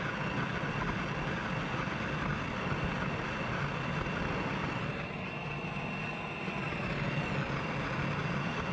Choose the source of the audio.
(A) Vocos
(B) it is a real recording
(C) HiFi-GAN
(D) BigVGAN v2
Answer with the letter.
B